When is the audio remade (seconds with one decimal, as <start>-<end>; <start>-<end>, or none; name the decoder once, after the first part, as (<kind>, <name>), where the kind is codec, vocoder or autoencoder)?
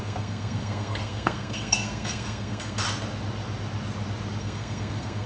0.0-2.8 (codec, SNAC); 4.4-5.3